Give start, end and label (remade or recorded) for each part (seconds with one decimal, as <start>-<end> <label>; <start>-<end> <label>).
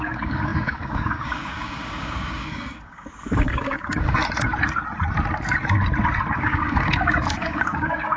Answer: 0.0-4.2 remade; 4.2-6.3 recorded; 6.3-8.2 remade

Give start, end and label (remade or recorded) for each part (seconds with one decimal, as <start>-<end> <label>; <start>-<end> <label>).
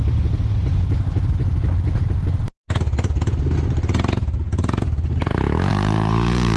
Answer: 0.0-5.7 recorded; 5.7-6.6 remade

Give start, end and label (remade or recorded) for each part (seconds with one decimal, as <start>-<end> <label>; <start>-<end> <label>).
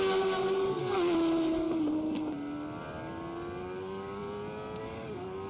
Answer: 0.0-0.8 remade; 0.8-3.6 recorded; 3.6-4.2 remade; 4.2-4.8 recorded; 4.8-5.5 remade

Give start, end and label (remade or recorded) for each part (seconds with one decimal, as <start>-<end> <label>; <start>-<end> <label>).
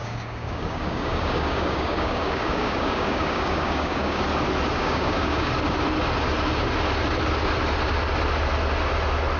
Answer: 0.0-4.2 remade; 4.2-4.8 recorded; 4.8-5.5 remade; 5.5-9.4 recorded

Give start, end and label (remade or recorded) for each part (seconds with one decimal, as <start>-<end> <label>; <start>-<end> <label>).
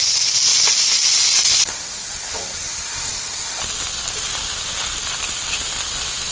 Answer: 0.0-6.3 recorded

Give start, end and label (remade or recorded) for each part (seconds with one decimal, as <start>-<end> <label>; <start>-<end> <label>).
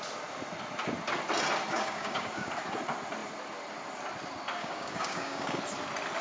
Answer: 0.0-1.7 recorded; 1.7-2.5 remade; 2.5-4.6 recorded; 4.6-5.6 remade; 5.6-6.2 recorded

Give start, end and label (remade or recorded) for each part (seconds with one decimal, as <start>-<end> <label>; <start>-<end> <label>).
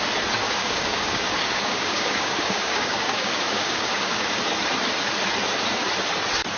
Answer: 0.0-0.4 recorded; 0.4-4.4 remade; 4.4-6.6 recorded